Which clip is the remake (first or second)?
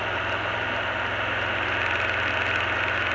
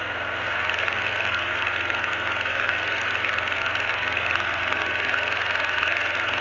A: second